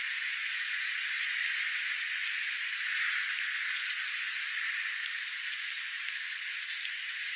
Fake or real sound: real